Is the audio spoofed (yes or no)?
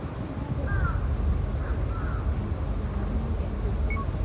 no